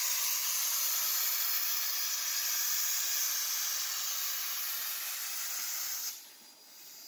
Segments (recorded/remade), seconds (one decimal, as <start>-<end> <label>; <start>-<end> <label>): 0.0-7.1 recorded